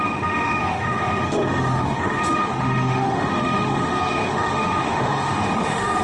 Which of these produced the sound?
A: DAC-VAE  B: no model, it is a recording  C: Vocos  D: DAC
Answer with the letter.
A